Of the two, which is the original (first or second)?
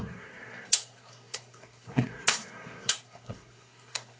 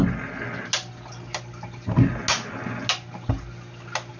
second